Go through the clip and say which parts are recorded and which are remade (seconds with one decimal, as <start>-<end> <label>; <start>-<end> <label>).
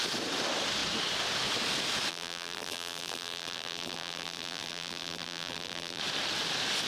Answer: 0.0-2.1 recorded; 2.1-6.0 remade; 6.0-6.9 recorded